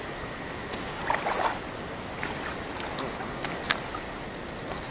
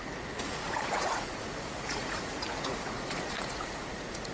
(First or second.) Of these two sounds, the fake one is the second